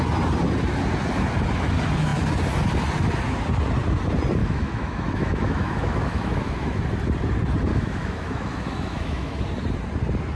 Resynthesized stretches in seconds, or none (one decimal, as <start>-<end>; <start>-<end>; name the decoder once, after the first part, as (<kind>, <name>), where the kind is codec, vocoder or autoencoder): 4.4-6.8 (autoencoder, DAC-VAE); 7.7-9.4